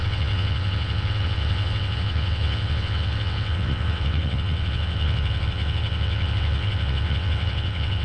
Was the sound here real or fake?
fake